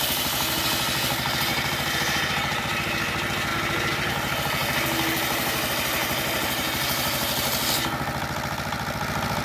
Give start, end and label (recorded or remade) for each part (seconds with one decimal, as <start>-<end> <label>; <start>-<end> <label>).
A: 0.0-1.5 recorded; 1.5-2.6 remade; 2.6-3.5 recorded; 3.5-4.1 remade; 4.1-9.4 recorded